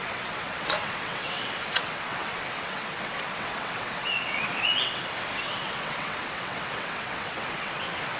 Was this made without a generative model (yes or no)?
no